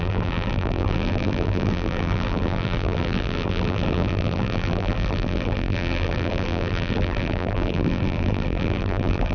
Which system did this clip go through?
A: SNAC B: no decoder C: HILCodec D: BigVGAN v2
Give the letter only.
D